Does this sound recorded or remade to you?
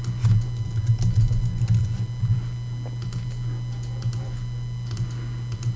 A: recorded